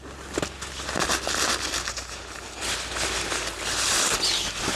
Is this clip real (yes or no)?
yes